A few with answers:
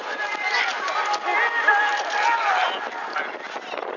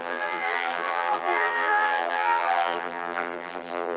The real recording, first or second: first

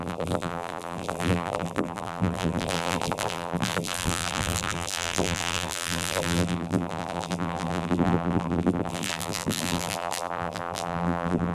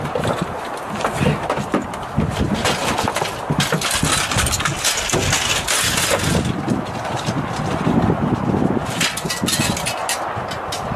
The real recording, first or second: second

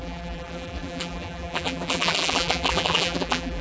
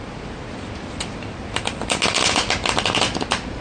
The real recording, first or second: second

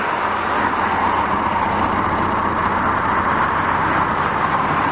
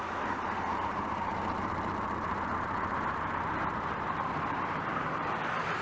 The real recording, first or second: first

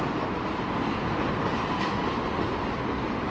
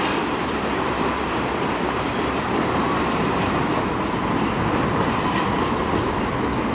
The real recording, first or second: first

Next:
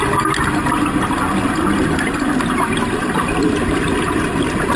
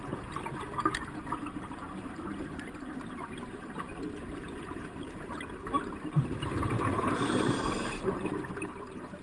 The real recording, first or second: first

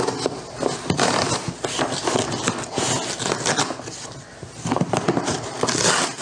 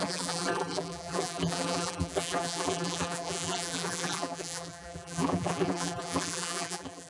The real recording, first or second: first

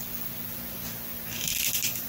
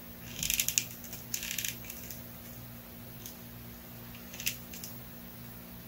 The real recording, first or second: second